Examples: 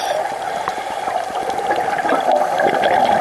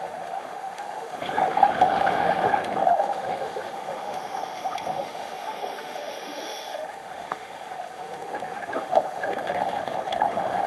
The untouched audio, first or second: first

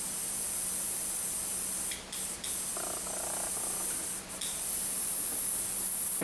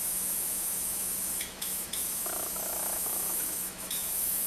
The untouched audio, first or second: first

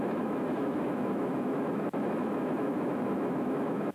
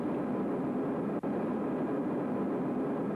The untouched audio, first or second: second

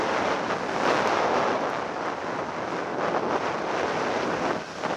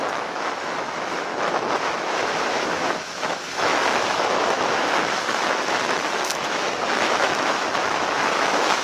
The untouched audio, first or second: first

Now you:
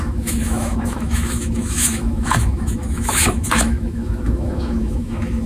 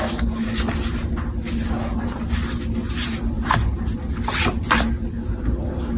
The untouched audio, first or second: second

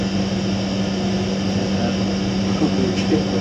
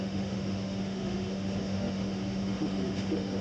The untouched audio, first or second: first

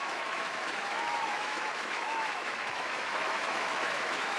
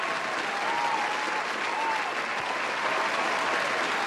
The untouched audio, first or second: second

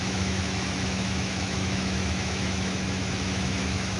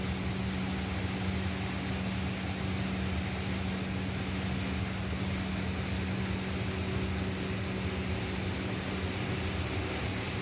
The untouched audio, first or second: second